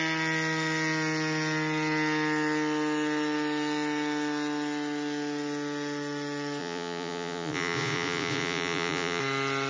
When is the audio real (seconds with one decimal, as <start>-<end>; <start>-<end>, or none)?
0.0-6.6; 9.2-9.7